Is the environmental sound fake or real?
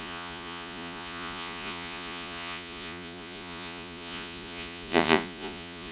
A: fake